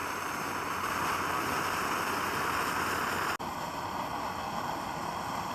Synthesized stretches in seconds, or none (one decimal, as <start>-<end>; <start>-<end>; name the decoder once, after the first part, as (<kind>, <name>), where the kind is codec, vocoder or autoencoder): none